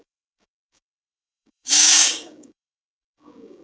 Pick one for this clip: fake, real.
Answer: fake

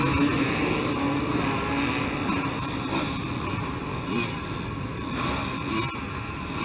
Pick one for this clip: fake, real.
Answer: real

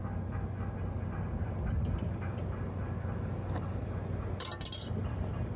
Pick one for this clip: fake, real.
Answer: real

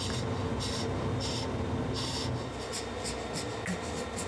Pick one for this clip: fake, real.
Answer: real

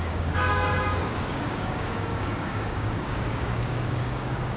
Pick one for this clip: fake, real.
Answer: fake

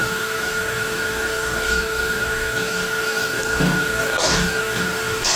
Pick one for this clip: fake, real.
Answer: fake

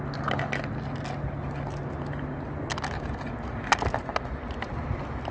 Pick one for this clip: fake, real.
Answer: real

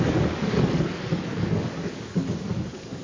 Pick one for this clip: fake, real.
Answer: fake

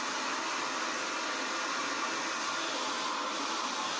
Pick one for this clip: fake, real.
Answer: real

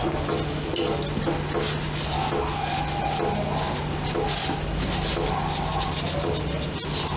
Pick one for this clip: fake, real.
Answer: real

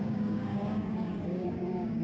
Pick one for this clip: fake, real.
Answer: fake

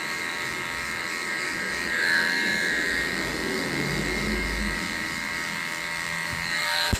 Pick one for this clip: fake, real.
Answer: fake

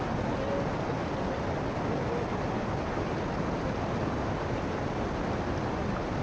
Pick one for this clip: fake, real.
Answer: real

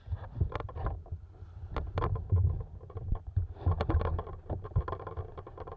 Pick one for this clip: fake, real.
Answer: real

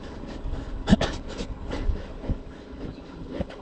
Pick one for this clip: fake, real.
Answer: fake